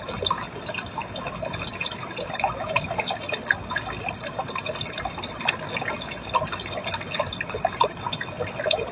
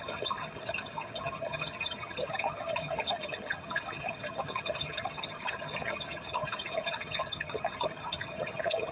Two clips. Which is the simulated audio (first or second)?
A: second